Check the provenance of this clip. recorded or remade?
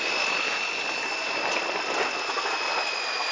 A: recorded